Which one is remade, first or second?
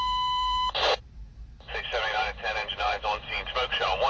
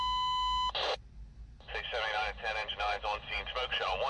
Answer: first